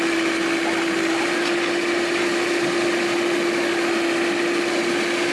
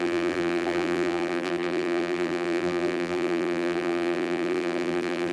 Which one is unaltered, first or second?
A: first